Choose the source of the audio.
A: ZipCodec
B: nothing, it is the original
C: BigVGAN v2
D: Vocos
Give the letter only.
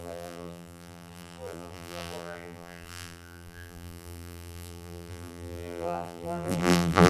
C